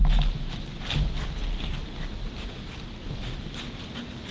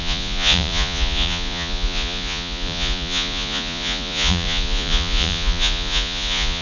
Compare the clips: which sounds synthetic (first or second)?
second